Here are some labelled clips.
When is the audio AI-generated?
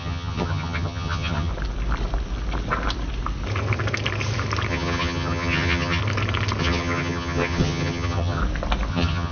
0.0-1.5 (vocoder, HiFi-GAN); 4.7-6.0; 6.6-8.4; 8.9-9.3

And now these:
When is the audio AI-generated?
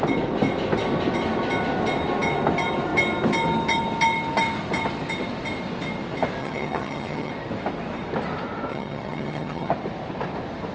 6.4-7.3 (vocoder, HiFi-GAN); 8.7-9.7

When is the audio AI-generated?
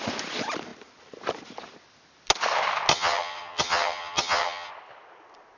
2.9-4.7 (vocoder, HiFi-GAN)